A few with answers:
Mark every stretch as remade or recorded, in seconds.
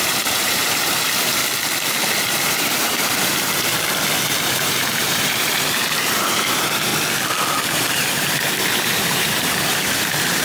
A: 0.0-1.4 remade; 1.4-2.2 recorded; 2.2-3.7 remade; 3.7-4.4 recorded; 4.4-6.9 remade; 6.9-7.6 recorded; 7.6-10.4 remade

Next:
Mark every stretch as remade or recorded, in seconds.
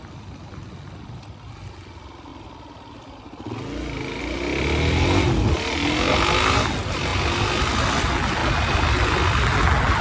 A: 0.0-10.0 recorded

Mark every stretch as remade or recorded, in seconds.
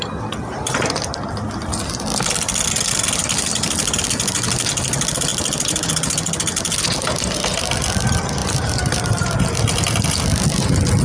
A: 0.0-5.3 recorded; 5.3-5.9 remade; 5.9-8.4 recorded; 8.4-9.3 remade; 9.3-11.0 recorded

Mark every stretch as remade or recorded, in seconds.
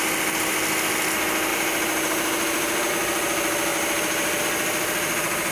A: 0.0-1.5 recorded; 1.5-2.9 remade; 2.9-3.7 recorded; 3.7-4.4 remade; 4.4-5.5 recorded